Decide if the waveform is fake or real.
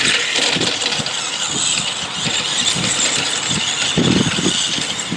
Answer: real